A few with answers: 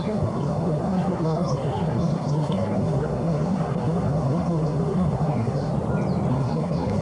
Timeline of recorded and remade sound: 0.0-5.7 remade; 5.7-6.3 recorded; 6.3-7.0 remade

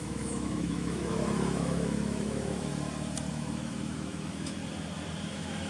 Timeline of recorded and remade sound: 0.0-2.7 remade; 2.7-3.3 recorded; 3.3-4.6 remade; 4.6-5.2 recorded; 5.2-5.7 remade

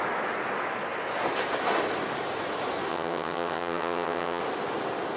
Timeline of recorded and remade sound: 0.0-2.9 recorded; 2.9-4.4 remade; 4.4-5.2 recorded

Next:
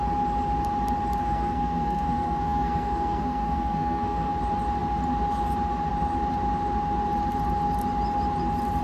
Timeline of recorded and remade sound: 0.0-1.2 recorded; 1.2-4.3 remade; 4.3-8.8 recorded

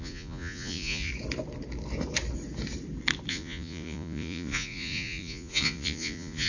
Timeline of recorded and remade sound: 0.0-1.1 remade; 1.1-3.3 recorded; 3.3-6.5 remade

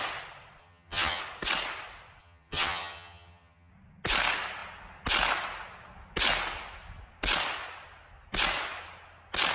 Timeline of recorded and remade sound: 0.0-0.6 recorded; 0.6-1.2 remade; 1.2-2.2 recorded; 2.2-3.7 remade; 3.7-9.5 recorded